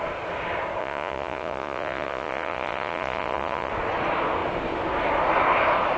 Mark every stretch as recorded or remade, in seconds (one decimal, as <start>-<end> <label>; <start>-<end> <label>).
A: 0.0-0.8 recorded; 0.8-3.7 remade; 3.7-6.0 recorded